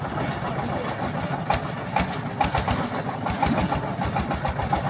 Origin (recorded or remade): recorded